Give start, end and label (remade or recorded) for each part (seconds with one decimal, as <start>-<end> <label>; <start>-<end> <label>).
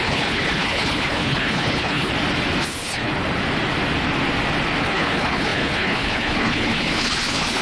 0.0-2.1 remade; 2.1-2.6 recorded; 2.6-3.1 remade; 3.1-4.8 recorded; 4.8-7.6 remade